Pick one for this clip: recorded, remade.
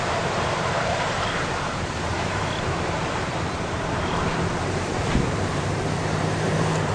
remade